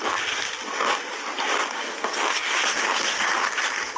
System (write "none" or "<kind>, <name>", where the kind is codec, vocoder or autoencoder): none